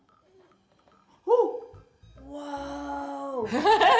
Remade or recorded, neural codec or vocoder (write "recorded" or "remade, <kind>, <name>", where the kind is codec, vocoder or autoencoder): recorded